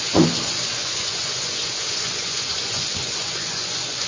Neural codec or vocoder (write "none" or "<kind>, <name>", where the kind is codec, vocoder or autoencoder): vocoder, Vocos